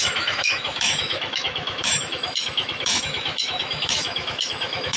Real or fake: fake